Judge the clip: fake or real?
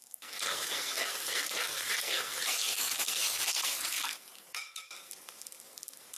fake